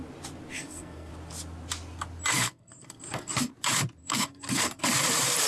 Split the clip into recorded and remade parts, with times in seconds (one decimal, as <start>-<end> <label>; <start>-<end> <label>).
0.0-0.5 recorded; 0.5-1.1 remade; 1.1-2.3 recorded; 2.3-3.5 remade; 3.5-4.0 recorded; 4.0-4.8 remade; 4.8-5.5 recorded